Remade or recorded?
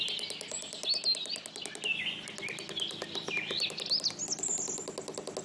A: recorded